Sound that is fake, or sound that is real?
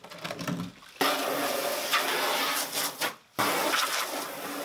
real